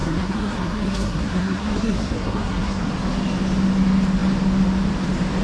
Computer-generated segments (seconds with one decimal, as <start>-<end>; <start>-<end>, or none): 0.0-2.9